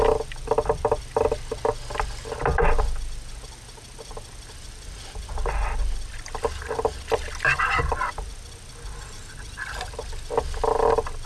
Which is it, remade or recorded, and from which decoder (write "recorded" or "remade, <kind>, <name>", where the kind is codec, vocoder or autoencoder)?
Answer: recorded